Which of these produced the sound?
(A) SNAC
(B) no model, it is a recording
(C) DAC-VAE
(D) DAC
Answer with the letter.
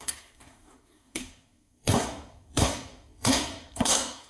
A